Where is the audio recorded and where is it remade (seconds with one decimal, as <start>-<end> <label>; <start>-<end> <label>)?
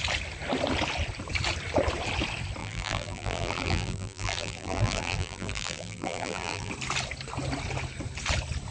0.0-2.6 recorded; 2.6-6.7 remade; 6.7-8.7 recorded